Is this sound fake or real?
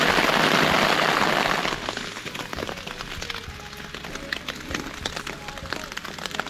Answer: real